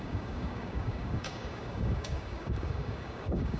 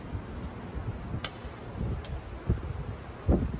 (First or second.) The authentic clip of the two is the second